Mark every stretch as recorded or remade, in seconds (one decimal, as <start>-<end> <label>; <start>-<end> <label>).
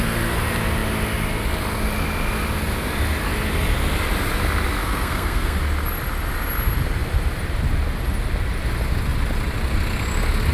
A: 0.0-4.8 recorded; 4.8-5.6 remade; 5.6-10.5 recorded